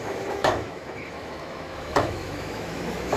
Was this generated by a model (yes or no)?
yes